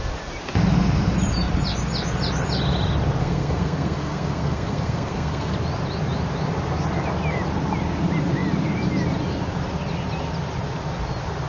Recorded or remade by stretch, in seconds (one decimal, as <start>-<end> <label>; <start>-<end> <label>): 0.0-3.2 recorded; 3.2-5.5 remade; 5.5-11.5 recorded